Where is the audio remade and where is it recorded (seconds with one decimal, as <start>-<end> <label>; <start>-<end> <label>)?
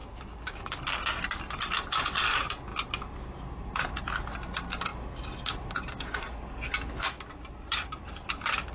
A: 0.0-0.8 remade; 0.8-8.7 recorded